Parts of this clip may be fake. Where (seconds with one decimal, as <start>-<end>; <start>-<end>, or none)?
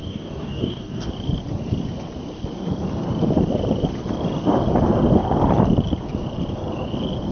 0.0-1.1